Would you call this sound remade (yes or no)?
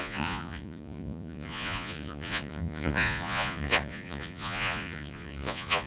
yes